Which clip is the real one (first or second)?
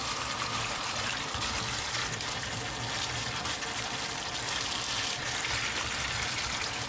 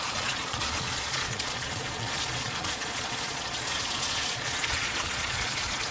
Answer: first